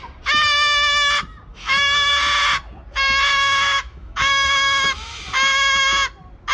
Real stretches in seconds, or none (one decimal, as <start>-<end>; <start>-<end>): 0.0-1.5; 2.1-3.3; 5.2-6.5

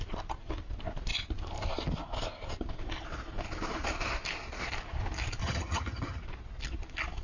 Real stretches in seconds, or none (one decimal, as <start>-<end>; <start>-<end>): 0.0-5.4; 6.2-7.2

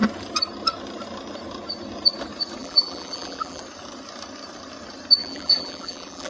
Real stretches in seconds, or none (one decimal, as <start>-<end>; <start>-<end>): 0.0-2.6; 3.6-5.2

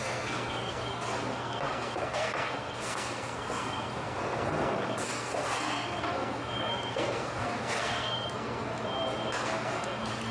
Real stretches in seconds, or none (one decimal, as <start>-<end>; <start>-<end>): 8.7-9.3

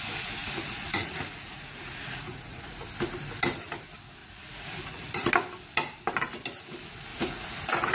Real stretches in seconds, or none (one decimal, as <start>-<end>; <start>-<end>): 0.0-0.4; 2.7-4.2; 5.1-7.1